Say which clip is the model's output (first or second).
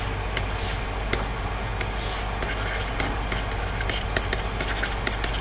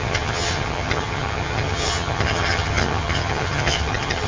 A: second